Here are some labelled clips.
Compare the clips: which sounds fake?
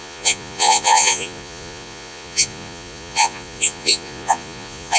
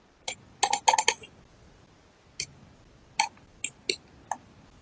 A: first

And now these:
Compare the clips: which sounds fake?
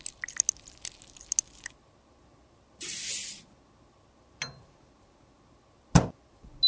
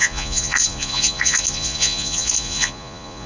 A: second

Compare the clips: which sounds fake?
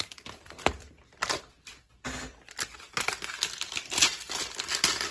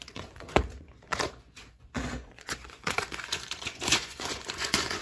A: second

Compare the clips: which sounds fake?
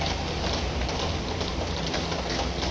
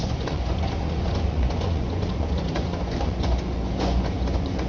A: second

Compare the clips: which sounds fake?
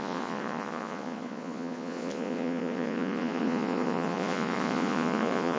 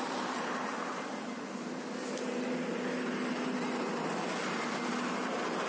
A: first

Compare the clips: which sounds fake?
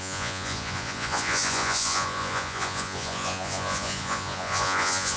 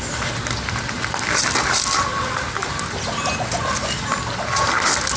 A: first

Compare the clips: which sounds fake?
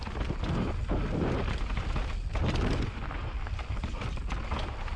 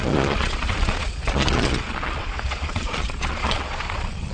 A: second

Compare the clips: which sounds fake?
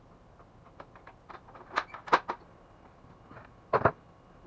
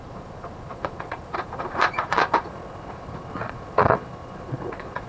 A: second